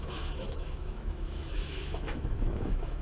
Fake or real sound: fake